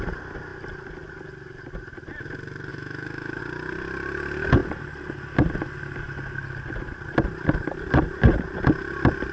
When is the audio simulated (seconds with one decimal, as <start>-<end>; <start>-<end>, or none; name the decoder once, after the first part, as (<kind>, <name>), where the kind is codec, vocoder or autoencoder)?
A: 2.7-3.4 (autoencoder, DAC-VAE)